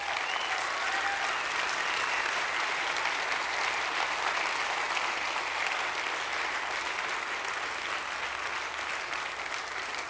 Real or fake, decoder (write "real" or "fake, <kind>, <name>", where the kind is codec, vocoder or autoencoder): real